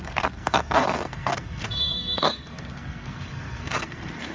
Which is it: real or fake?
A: fake